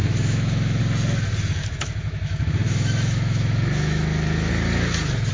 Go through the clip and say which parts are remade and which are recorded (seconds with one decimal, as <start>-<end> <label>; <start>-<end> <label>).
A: 0.0-0.8 remade; 0.8-1.6 recorded; 1.6-4.5 remade; 4.5-5.3 recorded